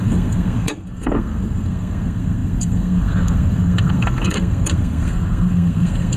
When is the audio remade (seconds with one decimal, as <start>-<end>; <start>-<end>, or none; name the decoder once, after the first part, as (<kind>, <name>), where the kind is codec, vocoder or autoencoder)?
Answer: 0.0-6.2 (codec, SNAC)

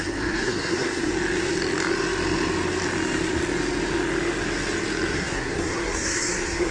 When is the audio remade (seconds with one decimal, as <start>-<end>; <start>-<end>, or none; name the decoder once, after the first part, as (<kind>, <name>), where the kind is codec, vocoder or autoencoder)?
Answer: 0.0-1.1 (codec, SNAC); 5.1-6.7

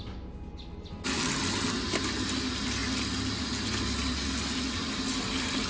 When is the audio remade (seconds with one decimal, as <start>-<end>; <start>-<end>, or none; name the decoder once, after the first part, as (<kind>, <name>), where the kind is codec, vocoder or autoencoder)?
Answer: none

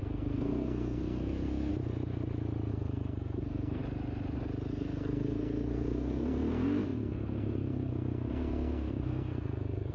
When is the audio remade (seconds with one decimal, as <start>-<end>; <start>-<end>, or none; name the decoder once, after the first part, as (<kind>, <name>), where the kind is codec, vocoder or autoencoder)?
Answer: 0.0-1.7 (codec, SNAC); 2.7-3.8; 4.7-9.9

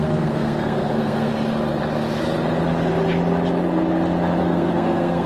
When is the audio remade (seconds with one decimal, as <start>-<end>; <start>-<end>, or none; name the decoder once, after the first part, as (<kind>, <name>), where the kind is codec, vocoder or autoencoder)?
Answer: 0.0-1.3 (codec, SNAC); 4.4-5.3